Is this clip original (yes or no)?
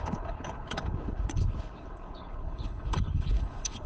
no